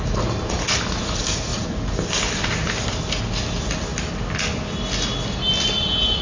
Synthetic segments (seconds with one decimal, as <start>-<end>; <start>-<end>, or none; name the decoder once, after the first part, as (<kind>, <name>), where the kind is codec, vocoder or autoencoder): none